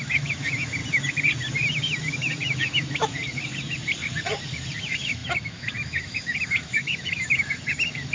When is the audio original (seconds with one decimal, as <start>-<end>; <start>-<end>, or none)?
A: 0.8-1.7; 3.2-4.8